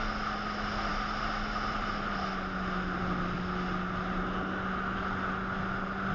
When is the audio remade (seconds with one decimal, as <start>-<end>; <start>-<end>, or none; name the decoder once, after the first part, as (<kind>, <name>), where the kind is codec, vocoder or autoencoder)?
none